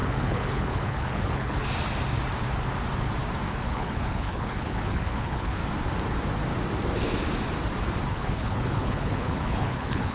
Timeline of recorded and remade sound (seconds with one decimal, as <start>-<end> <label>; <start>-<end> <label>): 0.0-1.6 remade; 1.6-3.6 recorded; 3.6-5.6 remade; 5.6-8.1 recorded; 8.1-10.1 remade